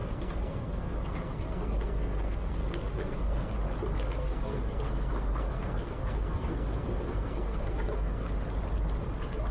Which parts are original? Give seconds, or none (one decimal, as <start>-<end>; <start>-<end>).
3.5-4.2; 8.3-9.5